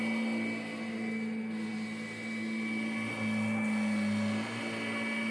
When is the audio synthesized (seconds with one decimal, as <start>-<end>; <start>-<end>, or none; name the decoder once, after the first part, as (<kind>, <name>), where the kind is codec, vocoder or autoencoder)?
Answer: none